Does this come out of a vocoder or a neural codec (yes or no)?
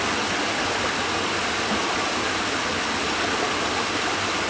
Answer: no